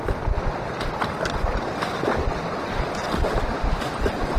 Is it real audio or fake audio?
real